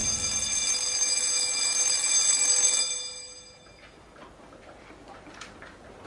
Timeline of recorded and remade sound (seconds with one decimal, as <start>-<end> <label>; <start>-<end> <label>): 0.0-3.7 recorded; 3.7-6.1 remade